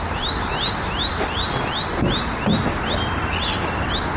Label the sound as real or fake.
real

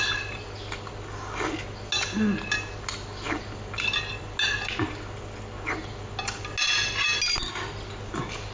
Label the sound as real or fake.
real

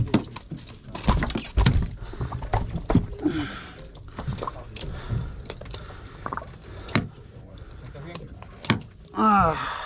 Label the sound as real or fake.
real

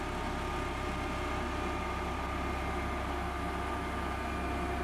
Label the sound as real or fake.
real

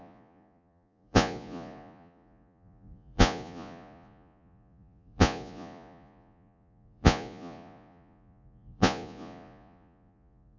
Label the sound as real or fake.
fake